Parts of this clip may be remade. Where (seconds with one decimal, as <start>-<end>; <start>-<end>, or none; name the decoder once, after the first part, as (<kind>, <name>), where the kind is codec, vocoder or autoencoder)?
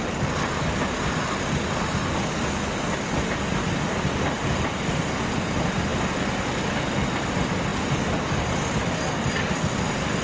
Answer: none